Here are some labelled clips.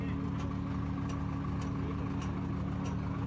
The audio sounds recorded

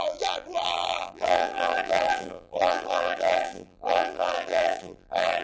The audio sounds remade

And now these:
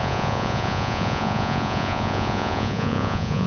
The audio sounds remade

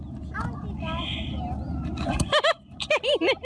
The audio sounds recorded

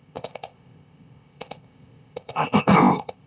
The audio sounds remade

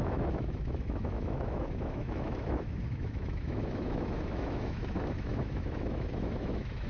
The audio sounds remade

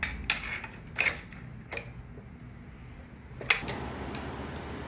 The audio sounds recorded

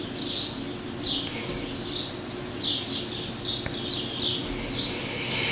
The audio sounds recorded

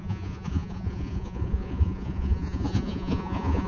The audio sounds remade